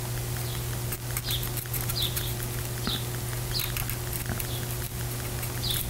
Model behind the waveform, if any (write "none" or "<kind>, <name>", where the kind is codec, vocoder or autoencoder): none